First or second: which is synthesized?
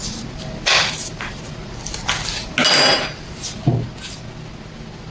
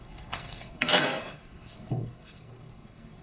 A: second